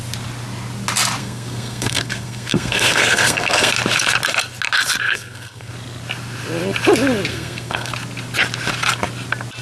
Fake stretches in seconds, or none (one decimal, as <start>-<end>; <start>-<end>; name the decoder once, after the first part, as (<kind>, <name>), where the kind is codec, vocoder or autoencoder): 1.2-3.7 (codec, SNAC); 5.0-5.7; 7.3-7.9